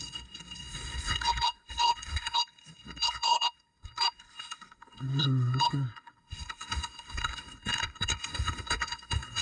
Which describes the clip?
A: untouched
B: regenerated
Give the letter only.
B